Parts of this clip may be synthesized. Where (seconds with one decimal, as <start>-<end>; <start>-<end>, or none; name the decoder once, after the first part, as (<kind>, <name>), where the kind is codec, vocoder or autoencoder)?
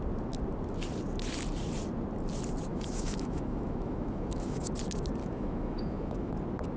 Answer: 2.7-4.7 (autoencoder, DAC-VAE); 5.2-6.3